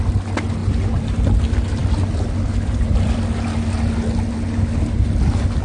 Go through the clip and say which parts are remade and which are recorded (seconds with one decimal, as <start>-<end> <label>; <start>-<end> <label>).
0.0-5.6 recorded